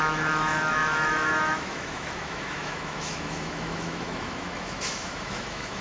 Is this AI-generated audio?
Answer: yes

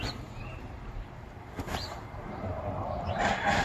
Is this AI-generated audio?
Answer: yes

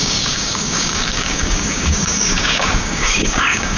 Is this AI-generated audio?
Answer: yes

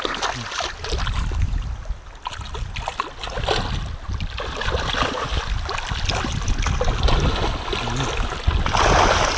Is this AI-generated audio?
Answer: no